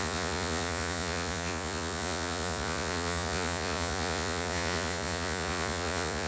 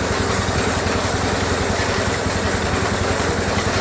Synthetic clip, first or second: first